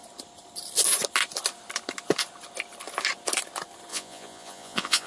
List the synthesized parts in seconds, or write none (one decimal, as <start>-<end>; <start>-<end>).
3.9-5.1